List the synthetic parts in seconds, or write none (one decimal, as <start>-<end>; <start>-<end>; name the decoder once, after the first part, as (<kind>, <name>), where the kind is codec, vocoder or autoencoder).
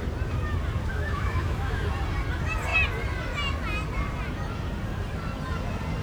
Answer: 0.9-1.9 (autoencoder, DAC-VAE)